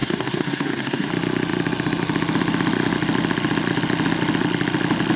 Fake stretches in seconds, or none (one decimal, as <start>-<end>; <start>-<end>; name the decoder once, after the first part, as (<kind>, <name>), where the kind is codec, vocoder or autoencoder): 0.0-1.1 (codec, SNAC)